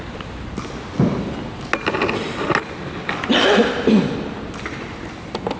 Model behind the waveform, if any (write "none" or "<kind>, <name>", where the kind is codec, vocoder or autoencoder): none